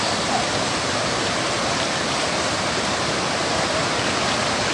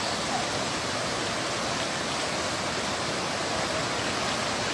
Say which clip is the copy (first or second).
first